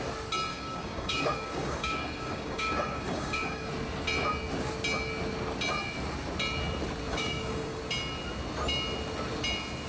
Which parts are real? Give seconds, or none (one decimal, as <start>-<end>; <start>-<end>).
0.0-0.5; 3.7-7.1; 7.8-9.9